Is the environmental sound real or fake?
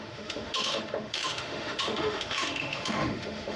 fake